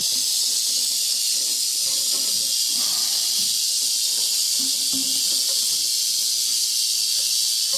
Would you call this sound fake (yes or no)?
no